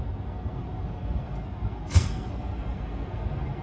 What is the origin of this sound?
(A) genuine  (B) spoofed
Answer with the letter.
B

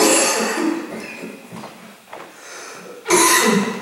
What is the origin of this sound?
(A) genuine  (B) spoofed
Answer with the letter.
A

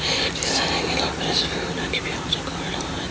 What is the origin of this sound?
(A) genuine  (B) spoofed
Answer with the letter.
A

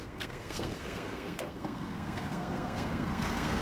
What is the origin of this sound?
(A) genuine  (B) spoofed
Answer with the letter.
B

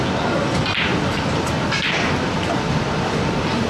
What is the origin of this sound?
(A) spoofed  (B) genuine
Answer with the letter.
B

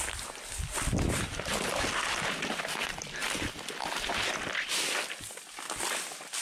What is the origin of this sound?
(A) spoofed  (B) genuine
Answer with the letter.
B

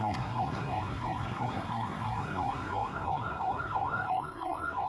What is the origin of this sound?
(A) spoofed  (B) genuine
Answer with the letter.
A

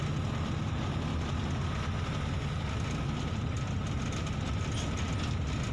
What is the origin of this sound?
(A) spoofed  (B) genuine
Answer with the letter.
B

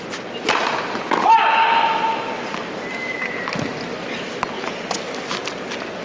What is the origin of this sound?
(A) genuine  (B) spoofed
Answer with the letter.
A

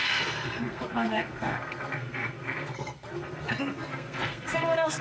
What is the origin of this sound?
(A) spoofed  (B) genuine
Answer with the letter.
A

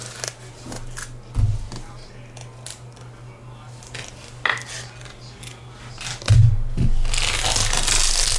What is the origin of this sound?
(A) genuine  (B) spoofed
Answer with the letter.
A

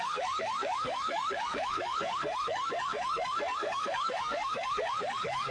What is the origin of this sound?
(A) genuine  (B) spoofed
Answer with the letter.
B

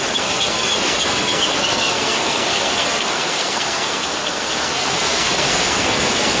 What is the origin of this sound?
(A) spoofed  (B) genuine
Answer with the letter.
A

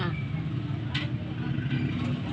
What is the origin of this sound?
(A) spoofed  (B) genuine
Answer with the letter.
B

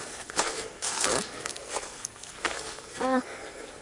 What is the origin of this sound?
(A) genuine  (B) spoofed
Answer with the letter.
B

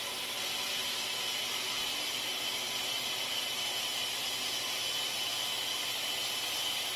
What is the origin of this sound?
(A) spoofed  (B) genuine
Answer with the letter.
B